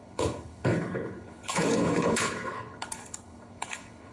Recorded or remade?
remade